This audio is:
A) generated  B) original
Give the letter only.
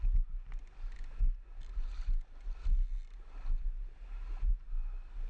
B